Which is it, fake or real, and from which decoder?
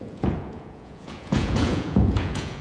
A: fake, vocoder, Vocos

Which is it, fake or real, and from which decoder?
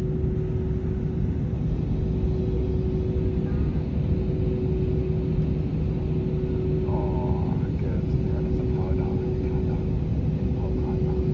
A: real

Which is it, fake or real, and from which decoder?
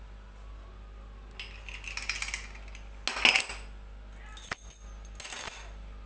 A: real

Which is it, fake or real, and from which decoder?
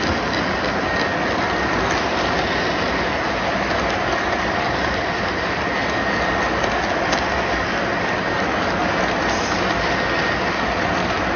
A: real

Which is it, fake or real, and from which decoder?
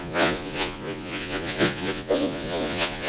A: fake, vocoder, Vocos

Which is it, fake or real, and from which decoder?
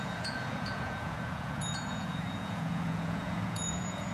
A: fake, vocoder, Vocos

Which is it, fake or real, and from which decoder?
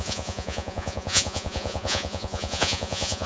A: fake, vocoder, Vocos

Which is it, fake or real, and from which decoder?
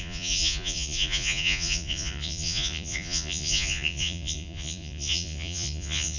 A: fake, vocoder, Vocos